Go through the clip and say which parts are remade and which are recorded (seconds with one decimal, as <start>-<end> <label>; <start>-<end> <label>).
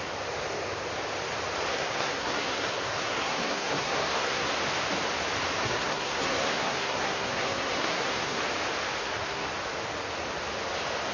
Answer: 0.0-1.7 recorded; 1.7-4.5 remade; 4.5-5.6 recorded; 5.6-8.4 remade; 8.4-9.0 recorded; 9.0-9.5 remade; 9.5-11.1 recorded